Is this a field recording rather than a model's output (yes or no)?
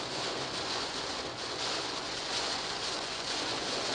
no